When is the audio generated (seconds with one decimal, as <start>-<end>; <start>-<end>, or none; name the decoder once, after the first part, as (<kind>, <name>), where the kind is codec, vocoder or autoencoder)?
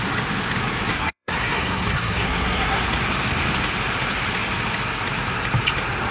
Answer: 0.9-2.8 (codec, SNAC)